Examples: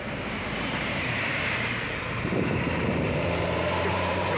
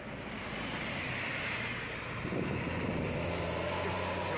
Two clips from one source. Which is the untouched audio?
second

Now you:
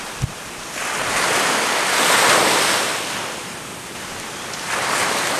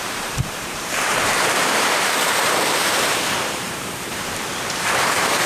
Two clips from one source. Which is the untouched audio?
first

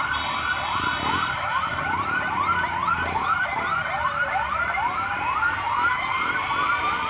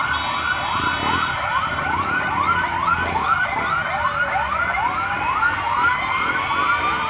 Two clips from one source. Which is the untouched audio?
second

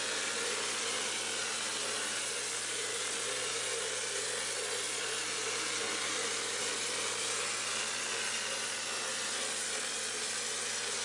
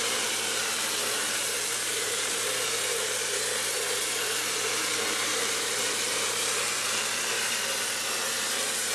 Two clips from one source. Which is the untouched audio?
first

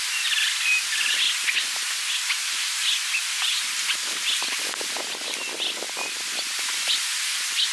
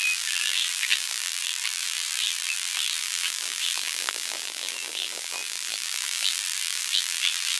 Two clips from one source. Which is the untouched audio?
first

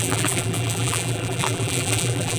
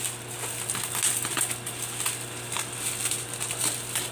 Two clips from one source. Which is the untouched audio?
second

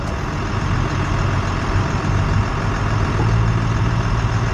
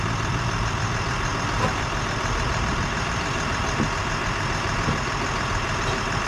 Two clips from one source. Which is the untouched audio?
first